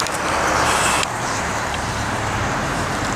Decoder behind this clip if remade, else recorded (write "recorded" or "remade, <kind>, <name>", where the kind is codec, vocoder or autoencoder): remade, vocoder, BigVGAN v2